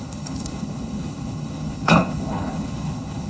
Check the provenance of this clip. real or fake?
fake